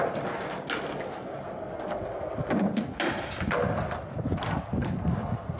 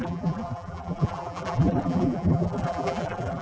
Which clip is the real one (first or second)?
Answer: first